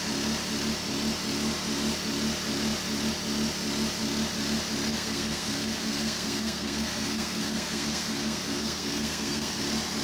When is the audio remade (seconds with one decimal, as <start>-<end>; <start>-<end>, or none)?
4.9-9.5

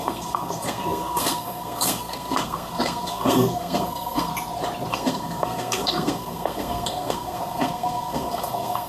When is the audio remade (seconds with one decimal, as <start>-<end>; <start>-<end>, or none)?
0.0-4.3; 4.9-8.9